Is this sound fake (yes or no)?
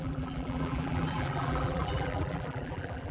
yes